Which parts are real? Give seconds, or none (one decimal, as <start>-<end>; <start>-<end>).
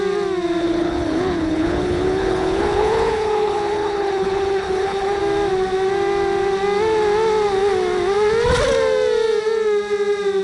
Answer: 0.0-0.6; 5.2-10.4